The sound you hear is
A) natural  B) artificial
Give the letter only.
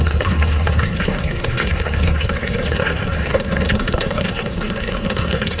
B